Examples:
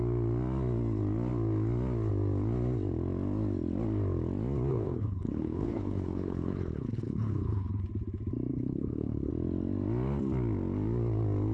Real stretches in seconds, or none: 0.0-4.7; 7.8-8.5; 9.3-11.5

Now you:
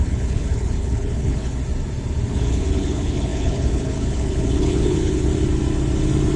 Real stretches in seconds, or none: 1.6-2.3; 5.3-6.4

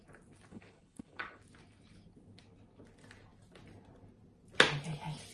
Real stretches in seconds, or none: 0.0-0.5; 1.4-5.3